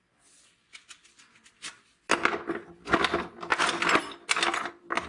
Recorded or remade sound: recorded